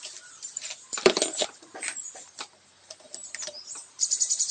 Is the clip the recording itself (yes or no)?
no